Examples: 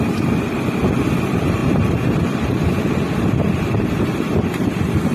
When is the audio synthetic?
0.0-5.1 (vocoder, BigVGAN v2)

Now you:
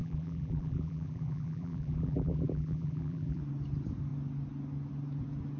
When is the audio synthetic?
0.0-3.4 (vocoder, BigVGAN v2)

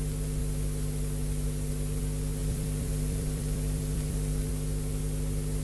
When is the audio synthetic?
2.4-4.5 (vocoder, BigVGAN v2)

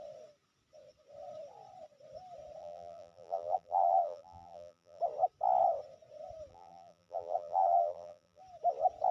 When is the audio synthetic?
2.6-5.0 (vocoder, BigVGAN v2); 6.5-8.4

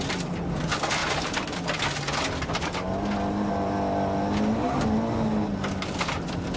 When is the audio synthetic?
1.0-1.6 (vocoder, BigVGAN v2)

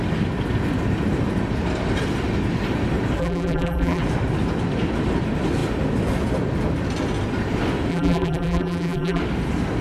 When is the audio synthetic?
3.2-4.0 (vocoder, BigVGAN v2); 7.9-9.2

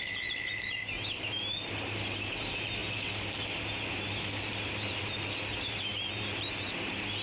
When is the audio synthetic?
0.0-0.8 (vocoder, BigVGAN v2); 1.7-2.8; 3.9-7.2

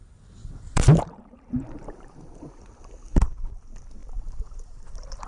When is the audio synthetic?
0.4-2.6 (vocoder, BigVGAN v2); 4.0-5.3